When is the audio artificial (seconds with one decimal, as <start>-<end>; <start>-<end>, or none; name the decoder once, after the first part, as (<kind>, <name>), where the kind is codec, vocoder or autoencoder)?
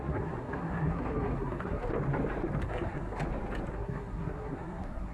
0.0-1.9 (codec, SNAC); 2.6-3.2; 3.7-5.1